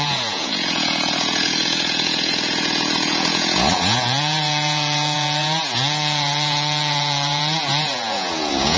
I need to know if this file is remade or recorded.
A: remade